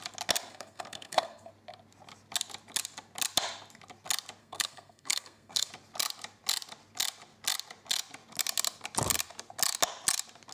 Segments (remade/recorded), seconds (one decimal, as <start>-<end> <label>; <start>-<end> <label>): 0.0-0.5 recorded; 0.5-1.5 remade; 1.5-4.4 recorded; 4.4-5.7 remade; 5.7-10.5 recorded